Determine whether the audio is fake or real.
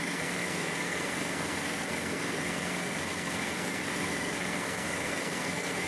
fake